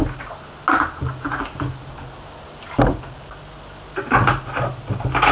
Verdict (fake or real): real